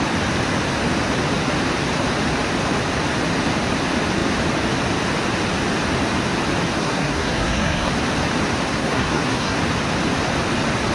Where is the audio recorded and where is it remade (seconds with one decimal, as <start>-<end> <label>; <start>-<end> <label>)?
0.0-6.8 recorded; 6.8-7.9 remade; 7.9-8.7 recorded; 8.7-9.6 remade; 9.6-10.9 recorded